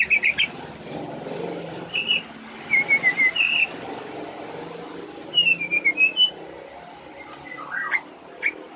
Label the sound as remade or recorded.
recorded